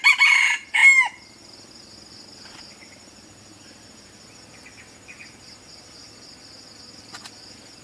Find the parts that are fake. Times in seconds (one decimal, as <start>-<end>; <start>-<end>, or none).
none